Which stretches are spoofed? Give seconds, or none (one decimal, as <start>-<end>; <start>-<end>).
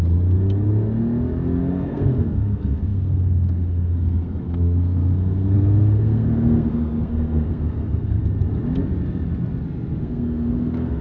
1.7-8.2; 10.0-11.0